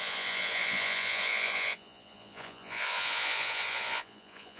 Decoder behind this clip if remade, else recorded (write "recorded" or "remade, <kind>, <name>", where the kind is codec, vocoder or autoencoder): remade, vocoder, Vocos